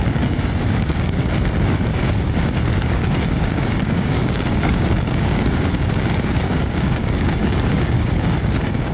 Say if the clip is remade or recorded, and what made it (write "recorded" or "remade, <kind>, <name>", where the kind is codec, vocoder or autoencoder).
remade, codec, DAC